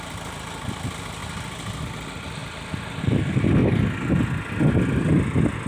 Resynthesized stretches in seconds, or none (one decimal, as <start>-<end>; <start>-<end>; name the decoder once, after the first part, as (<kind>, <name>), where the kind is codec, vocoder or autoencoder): none